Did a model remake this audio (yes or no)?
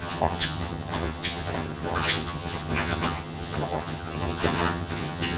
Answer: yes